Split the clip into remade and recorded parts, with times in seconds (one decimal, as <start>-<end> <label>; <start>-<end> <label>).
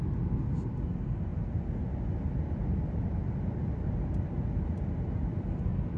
0.0-6.0 recorded